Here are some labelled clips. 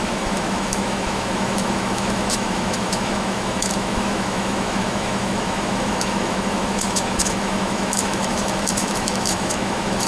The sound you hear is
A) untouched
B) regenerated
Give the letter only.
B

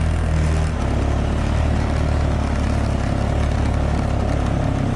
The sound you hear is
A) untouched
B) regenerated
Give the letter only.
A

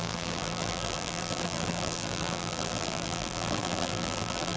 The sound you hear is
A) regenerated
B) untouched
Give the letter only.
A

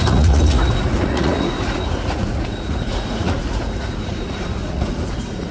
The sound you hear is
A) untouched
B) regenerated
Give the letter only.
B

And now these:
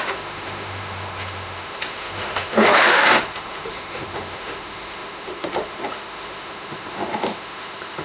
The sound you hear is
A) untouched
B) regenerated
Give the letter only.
B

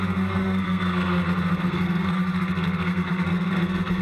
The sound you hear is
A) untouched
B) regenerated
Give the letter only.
B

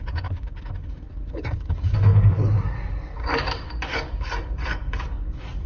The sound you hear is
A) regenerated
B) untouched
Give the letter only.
A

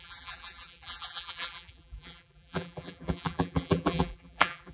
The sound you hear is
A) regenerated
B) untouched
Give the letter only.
A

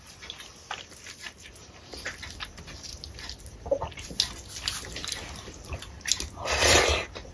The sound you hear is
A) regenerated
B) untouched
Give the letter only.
B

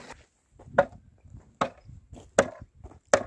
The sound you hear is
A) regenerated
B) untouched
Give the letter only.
B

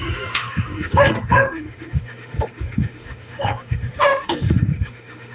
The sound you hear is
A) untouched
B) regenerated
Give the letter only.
B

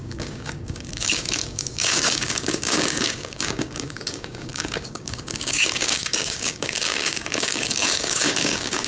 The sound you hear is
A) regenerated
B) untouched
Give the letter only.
A